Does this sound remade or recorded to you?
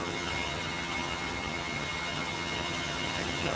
remade